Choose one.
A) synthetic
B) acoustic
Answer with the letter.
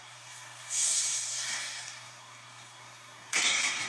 A